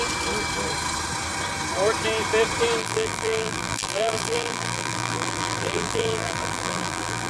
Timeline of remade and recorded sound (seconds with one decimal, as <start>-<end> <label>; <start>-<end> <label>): 0.0-2.8 recorded; 2.8-7.3 remade